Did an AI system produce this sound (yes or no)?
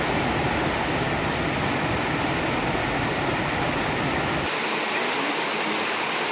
no